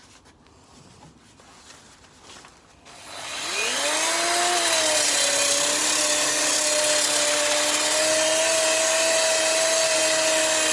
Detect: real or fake real